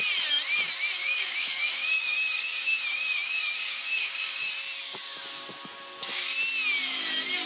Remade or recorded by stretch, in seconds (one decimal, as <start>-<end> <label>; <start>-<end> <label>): 0.0-1.0 recorded; 1.0-4.5 remade; 4.5-7.5 recorded